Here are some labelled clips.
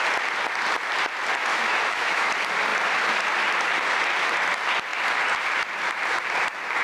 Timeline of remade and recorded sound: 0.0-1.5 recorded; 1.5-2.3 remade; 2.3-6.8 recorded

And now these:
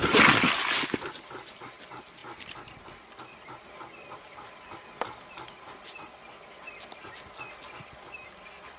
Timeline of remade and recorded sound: 0.0-8.8 recorded

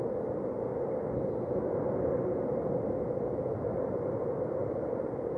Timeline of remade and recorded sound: 0.0-5.4 recorded

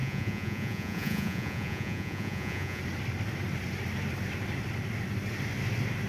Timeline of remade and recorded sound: 0.0-2.8 remade; 2.8-6.1 recorded

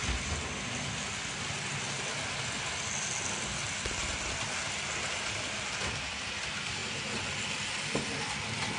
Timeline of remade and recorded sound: 0.0-8.8 recorded

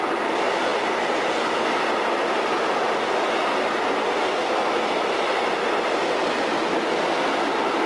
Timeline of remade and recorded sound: 0.0-7.9 recorded